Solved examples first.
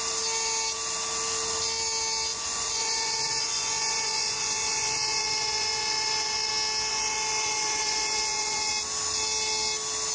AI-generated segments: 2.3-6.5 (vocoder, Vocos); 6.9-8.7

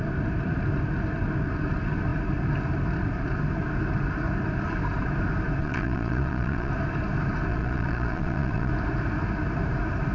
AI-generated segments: 5.6-6.7 (vocoder, Vocos); 7.5-8.7

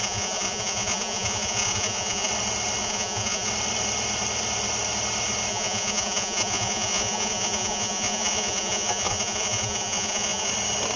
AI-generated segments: 0.0-2.3 (vocoder, Vocos); 2.8-3.5; 5.5-10.5

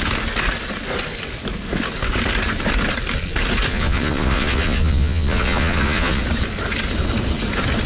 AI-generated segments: 3.7-6.2 (vocoder, Vocos)

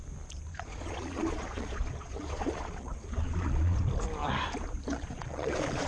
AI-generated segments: 0.5-3.9 (vocoder, Vocos); 4.9-5.9

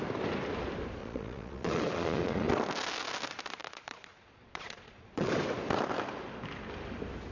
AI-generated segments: 1.0-2.5 (vocoder, Vocos); 3.6-5.3

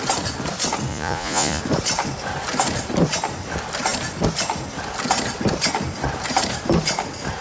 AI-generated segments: 0.9-1.6 (vocoder, Vocos)